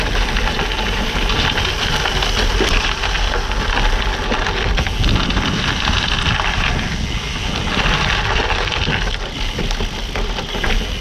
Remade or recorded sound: recorded